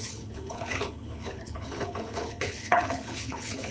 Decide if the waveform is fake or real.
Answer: fake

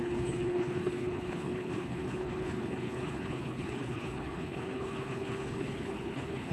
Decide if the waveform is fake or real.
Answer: fake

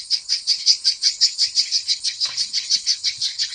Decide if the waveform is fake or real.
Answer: fake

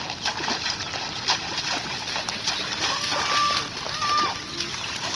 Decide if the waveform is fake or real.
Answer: real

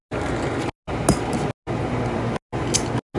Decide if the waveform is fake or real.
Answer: real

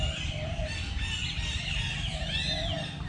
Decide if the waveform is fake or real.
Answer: real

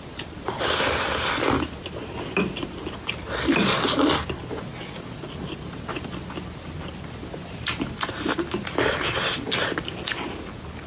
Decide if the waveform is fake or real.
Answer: real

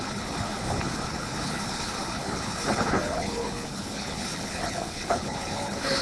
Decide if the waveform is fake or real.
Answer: fake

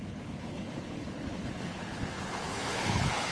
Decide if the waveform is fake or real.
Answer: fake